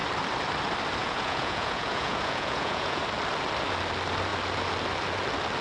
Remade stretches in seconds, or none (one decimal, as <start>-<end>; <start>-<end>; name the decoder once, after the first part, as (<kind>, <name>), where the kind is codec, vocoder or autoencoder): 1.0-3.0 (vocoder, Vocos)

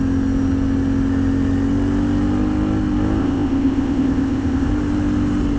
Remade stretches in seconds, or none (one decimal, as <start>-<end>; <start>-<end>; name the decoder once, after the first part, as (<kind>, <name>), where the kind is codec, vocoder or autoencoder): 3.2-4.7 (codec, ZipCodec)

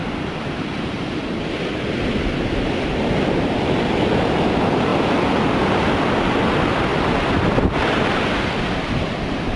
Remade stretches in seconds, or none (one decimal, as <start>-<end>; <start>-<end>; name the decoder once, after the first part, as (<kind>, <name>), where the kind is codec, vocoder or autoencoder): 0.0-2.1 (vocoder, BigVGAN v2); 4.9-5.7

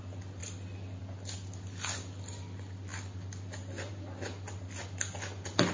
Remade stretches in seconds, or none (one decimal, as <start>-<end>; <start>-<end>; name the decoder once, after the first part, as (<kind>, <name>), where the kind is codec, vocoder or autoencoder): 0.4-1.0 (vocoder, BigVGAN v2); 2.9-3.9

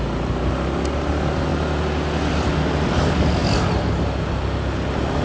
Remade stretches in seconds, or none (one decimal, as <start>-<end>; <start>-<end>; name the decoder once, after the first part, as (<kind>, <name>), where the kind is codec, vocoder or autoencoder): none

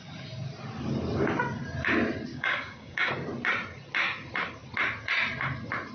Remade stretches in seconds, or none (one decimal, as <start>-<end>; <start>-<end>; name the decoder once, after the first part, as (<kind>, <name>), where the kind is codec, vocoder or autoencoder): 2.3-3.1 (codec, DAC)

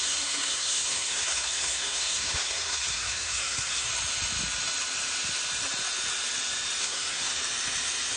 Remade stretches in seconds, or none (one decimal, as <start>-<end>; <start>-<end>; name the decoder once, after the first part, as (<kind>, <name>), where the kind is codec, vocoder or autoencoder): 0.0-3.9 (codec, SNAC); 6.8-7.3

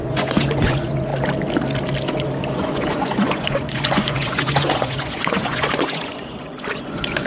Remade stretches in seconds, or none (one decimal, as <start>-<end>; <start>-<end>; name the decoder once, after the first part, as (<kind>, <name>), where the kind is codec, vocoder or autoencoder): 0.0-1.1 (vocoder, Vocos); 2.5-7.3